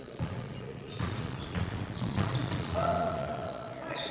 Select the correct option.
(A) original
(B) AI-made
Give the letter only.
B